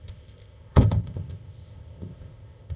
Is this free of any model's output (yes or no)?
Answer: no